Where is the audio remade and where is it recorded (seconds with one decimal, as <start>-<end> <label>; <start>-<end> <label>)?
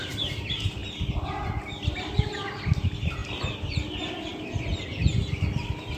0.0-0.8 remade; 0.8-1.6 recorded; 1.6-4.3 remade; 4.3-5.5 recorded; 5.5-6.0 remade